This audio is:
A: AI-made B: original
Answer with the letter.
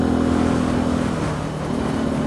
B